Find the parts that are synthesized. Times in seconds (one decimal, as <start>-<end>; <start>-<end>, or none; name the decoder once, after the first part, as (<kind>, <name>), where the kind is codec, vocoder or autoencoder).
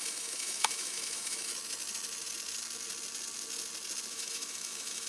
0.0-1.5 (autoencoder, DAC-VAE); 4.1-5.1